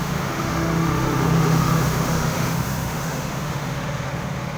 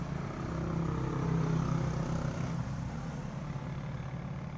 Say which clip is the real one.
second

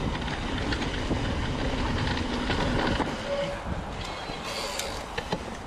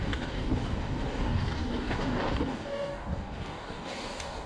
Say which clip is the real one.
first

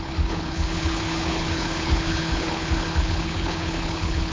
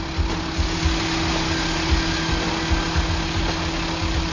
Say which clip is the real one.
second